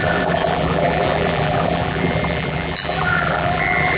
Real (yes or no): no